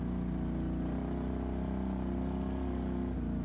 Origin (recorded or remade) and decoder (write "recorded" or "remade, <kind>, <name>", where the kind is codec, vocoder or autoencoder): recorded